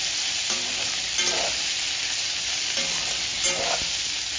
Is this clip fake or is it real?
real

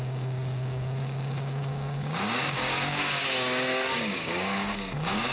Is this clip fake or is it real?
fake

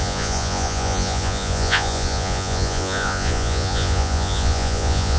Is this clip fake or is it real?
fake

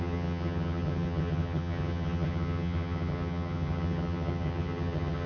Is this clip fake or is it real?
fake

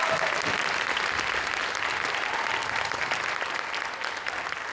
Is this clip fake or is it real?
real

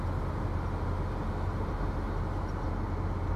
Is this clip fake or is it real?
real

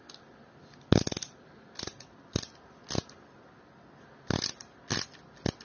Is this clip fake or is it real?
real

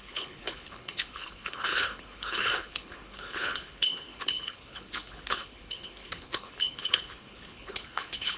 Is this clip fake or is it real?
fake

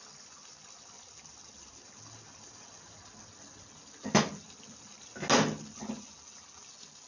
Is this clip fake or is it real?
real